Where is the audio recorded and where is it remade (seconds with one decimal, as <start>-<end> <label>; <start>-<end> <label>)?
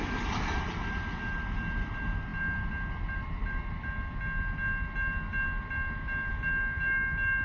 0.0-7.4 recorded